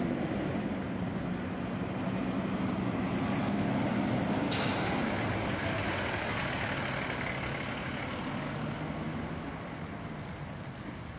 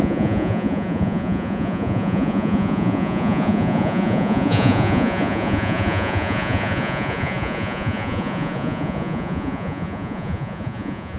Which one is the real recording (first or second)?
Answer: first